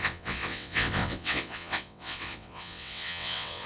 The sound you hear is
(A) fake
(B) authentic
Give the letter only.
A